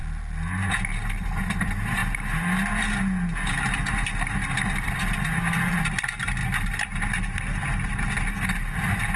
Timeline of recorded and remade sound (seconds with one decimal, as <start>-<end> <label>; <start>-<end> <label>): 0.0-9.2 recorded